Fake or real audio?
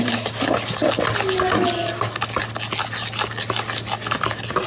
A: real